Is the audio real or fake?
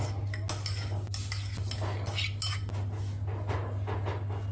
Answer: real